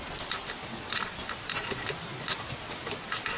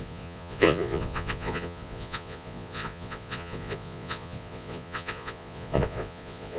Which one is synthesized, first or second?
second